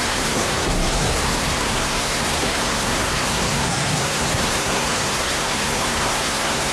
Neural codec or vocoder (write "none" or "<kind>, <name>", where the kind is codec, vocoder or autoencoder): codec, SNAC